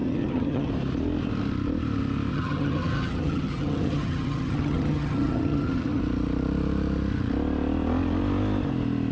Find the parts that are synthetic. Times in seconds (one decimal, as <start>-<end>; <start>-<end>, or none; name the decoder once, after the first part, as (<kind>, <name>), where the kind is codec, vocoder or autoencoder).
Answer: 0.0-0.7 (vocoder, HiFi-GAN); 2.3-6.0